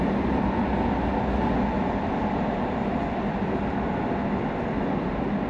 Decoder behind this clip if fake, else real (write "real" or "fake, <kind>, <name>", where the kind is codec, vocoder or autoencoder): real